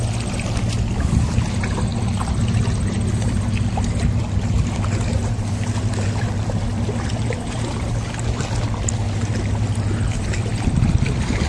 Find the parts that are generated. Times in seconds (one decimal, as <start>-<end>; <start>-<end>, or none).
5.2-6.3